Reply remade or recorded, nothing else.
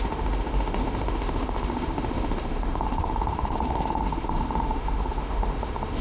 remade